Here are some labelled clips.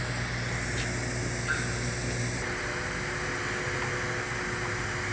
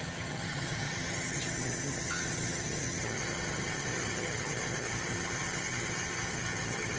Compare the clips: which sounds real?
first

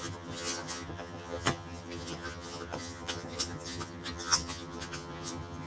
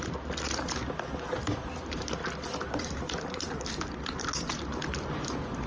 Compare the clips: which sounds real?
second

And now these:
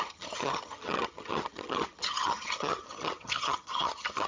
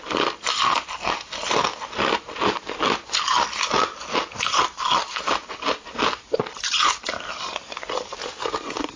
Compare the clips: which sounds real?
second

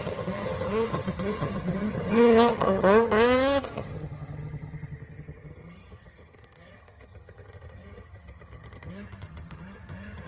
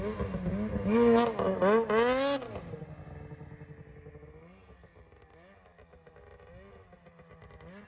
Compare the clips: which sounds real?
second